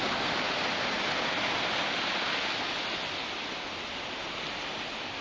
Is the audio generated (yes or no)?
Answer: no